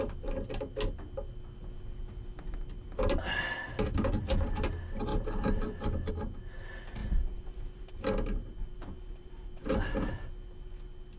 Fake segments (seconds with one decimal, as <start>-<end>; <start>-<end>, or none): 7.0-7.9; 9.2-10.1